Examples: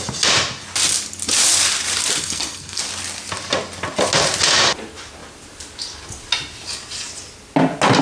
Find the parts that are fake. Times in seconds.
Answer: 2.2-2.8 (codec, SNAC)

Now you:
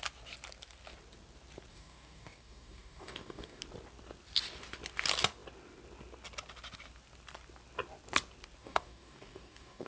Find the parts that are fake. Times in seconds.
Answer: 1.7-3.6 (codec, DAC); 8.6-9.9